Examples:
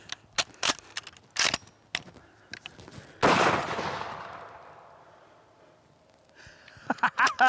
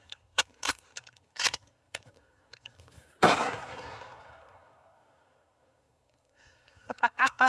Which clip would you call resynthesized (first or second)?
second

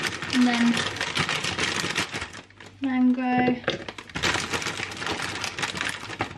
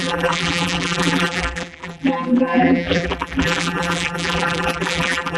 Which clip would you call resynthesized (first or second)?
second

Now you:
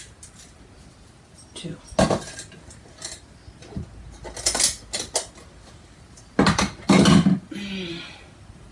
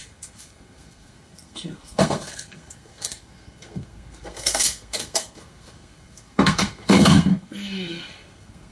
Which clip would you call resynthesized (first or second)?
second